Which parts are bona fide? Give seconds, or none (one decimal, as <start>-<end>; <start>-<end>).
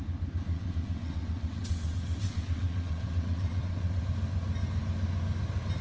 0.0-0.5; 4.0-5.8